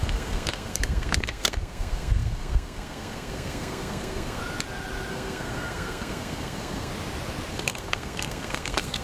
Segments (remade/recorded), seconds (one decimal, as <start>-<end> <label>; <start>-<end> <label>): 0.0-4.4 remade; 4.4-5.1 recorded; 5.1-6.9 remade; 6.9-7.5 recorded; 7.5-9.0 remade